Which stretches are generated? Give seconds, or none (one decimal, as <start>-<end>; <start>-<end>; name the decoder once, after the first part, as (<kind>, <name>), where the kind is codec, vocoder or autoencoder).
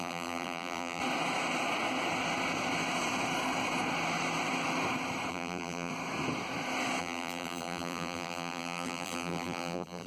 0.0-1.0 (vocoder, BigVGAN v2); 5.3-5.9; 7.0-10.1